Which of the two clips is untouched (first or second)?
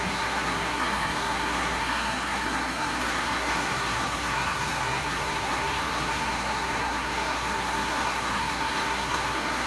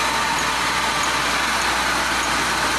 second